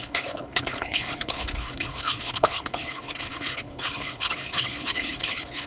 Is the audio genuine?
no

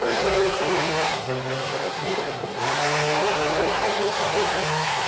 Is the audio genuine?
no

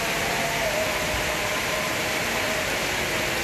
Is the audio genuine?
yes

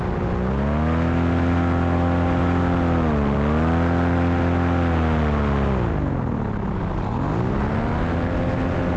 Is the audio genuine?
yes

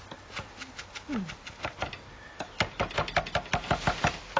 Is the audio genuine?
yes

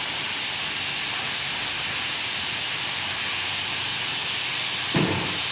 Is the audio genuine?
yes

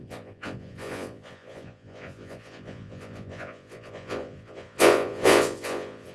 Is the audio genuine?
no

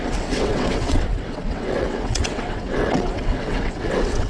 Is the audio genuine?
no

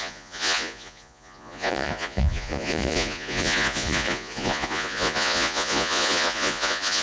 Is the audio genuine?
no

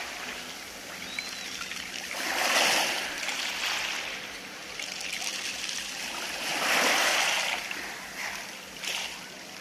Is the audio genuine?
yes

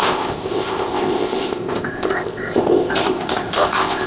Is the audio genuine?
no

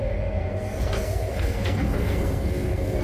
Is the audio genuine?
no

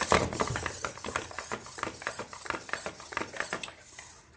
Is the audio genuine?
yes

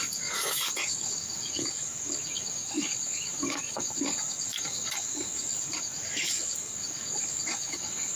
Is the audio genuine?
no